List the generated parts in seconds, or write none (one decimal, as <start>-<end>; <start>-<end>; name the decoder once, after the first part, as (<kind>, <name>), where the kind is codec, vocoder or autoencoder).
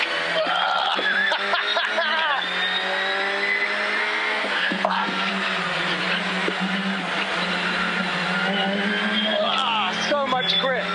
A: 4.0-5.3 (codec, SNAC)